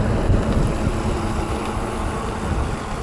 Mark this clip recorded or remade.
recorded